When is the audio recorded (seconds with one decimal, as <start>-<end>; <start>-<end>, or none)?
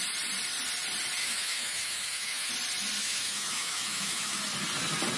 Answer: 0.0-1.2; 2.5-3.0; 4.4-5.2